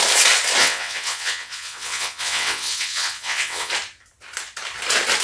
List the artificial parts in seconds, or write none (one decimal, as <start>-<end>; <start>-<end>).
0.6-3.7